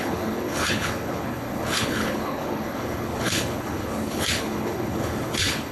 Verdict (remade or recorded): remade